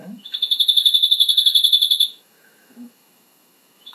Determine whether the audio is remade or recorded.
remade